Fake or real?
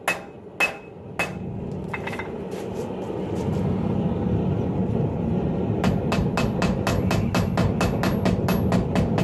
real